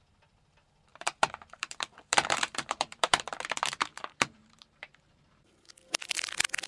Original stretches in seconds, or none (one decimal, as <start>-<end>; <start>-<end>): 0.0-0.9; 3.4-3.9; 5.7-6.7